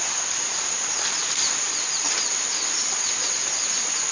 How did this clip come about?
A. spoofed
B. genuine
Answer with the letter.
B